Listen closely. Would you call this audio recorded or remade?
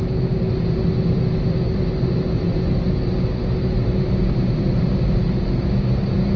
recorded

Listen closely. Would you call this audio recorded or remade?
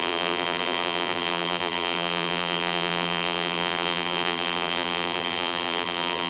remade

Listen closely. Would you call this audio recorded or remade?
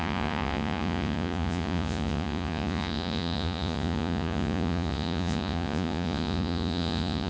remade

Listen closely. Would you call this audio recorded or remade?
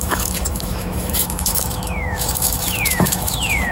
remade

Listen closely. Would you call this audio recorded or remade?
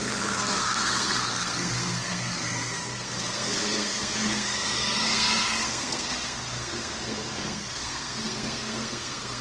remade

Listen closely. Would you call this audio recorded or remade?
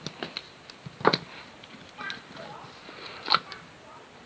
recorded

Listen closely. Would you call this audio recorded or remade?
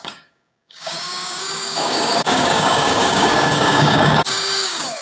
remade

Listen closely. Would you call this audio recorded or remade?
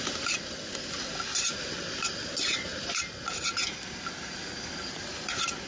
recorded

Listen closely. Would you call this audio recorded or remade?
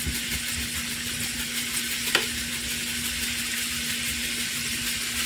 recorded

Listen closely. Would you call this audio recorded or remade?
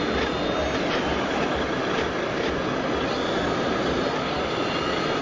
recorded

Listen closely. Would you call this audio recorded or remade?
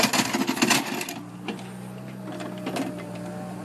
recorded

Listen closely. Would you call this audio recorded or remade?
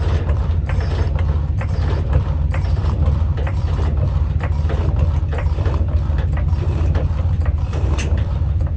remade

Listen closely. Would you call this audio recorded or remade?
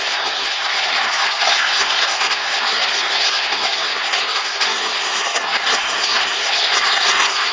remade